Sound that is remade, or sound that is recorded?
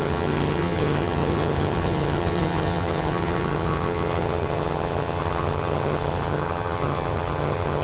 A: remade